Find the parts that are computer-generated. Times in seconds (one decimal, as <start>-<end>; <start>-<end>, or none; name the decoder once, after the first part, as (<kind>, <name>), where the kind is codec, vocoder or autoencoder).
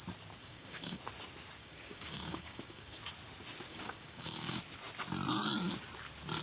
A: 0.4-1.0 (codec, DAC); 1.6-3.0; 3.7-4.6